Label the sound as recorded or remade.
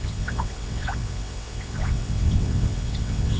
remade